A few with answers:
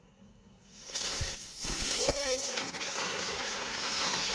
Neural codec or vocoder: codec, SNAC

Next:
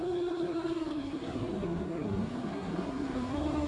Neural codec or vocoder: codec, SNAC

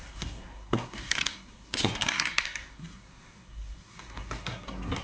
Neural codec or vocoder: codec, SNAC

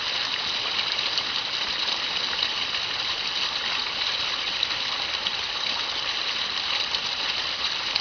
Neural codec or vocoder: none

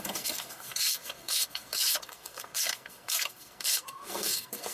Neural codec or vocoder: codec, SNAC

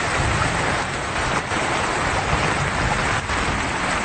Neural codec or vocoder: none